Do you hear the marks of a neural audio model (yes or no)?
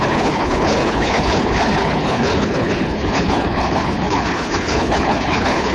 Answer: yes